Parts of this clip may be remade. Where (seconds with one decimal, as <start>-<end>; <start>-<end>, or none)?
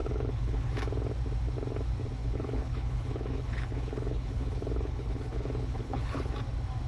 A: 0.0-0.7; 2.2-6.3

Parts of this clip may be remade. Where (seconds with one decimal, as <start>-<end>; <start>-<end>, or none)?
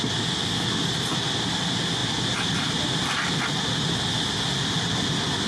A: none